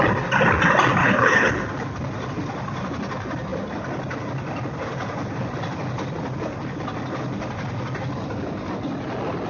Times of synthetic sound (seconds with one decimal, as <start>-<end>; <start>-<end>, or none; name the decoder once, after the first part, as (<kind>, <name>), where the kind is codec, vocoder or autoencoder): 1.0-1.5 (codec, HILCodec)